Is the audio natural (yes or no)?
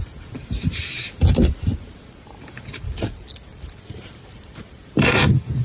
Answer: no